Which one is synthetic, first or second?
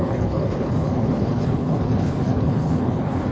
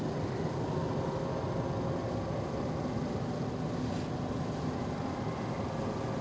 first